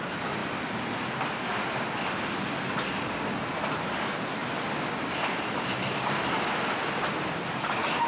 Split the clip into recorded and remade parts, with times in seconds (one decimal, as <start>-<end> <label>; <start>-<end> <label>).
0.0-4.4 recorded; 4.4-6.4 remade; 6.4-8.1 recorded